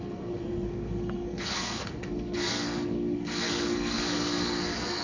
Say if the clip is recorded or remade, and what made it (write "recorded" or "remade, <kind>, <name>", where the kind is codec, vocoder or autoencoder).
remade, codec, SNAC